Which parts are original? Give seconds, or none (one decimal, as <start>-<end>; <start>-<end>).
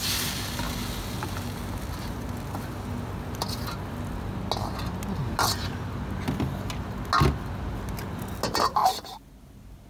0.0-9.9